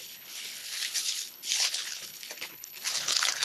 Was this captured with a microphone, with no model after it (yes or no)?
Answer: no